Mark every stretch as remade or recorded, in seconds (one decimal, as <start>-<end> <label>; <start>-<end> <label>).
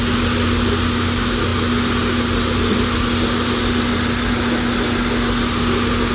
0.0-6.1 recorded